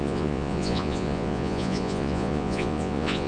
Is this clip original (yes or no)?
no